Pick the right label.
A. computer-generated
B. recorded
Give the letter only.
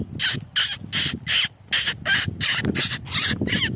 B